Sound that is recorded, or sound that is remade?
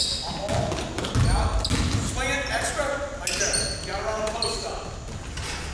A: recorded